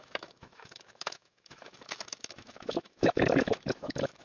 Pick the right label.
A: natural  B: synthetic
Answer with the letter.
B